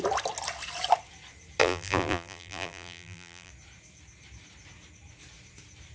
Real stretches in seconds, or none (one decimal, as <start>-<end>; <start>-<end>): 0.0-1.6; 3.5-5.9